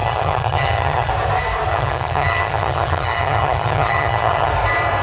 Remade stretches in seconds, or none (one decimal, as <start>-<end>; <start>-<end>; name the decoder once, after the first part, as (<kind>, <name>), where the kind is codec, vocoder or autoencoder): 0.0-1.1 (vocoder, HiFi-GAN); 1.7-4.5